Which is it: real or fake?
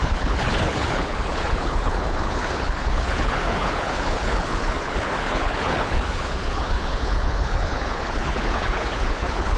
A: fake